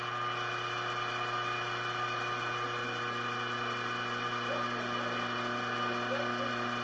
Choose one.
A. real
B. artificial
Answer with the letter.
A